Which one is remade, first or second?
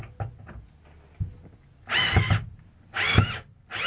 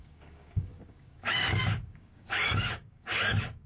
second